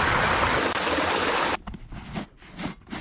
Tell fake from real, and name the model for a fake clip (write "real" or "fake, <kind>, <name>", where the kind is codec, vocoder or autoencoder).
real